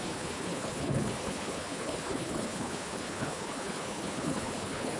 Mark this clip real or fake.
fake